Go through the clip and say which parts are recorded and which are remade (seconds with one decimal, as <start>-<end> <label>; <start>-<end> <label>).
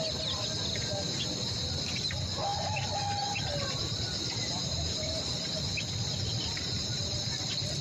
0.0-4.6 recorded; 4.6-5.2 remade; 5.2-7.8 recorded